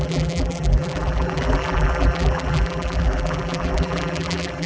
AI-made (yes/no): yes